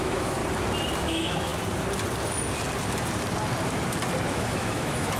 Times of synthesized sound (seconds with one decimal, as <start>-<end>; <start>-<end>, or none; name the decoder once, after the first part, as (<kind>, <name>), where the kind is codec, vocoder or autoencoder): 0.0-0.4 (autoencoder, DAC-VAE); 1.0-1.5; 4.3-5.2